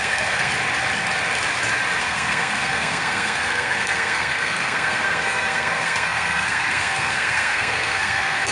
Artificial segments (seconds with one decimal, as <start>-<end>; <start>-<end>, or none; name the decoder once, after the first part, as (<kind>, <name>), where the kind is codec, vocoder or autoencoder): 0.0-0.5 (codec, SNAC); 2.0-8.5